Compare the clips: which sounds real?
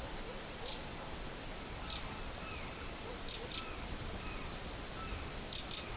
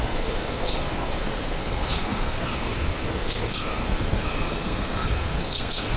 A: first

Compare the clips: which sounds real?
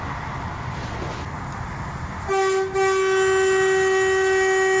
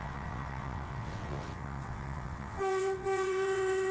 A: first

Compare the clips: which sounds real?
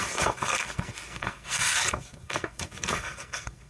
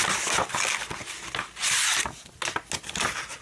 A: second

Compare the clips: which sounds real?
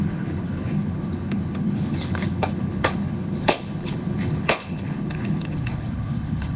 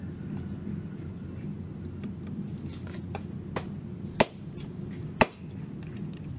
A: second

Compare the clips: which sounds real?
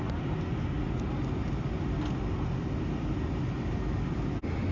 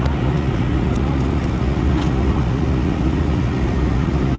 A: first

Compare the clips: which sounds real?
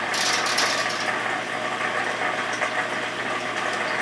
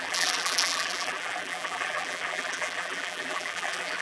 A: first